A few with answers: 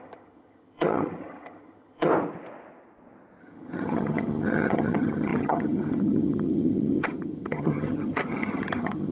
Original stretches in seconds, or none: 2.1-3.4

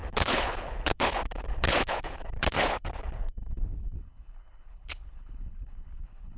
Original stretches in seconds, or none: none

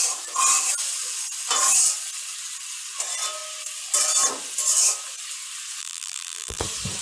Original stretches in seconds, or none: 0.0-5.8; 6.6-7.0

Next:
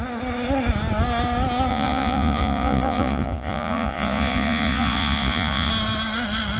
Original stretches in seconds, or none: 0.0-1.7; 5.7-6.6